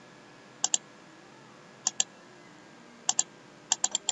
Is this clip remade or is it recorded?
recorded